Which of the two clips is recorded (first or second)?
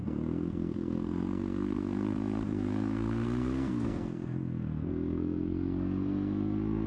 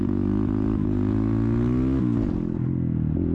second